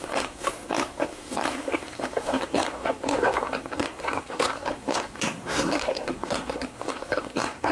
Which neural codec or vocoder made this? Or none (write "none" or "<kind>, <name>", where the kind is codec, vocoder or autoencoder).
codec, SNAC